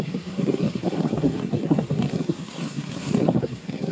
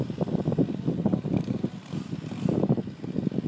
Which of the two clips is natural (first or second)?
second